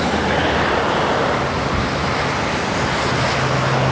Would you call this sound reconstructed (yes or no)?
no